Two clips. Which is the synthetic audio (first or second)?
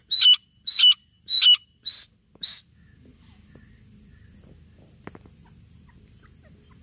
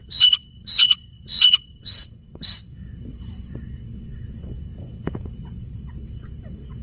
second